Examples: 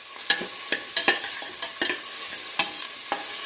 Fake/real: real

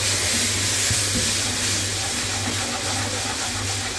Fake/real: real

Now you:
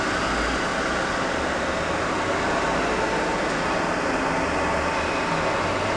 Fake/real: real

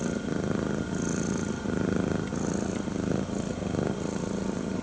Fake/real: real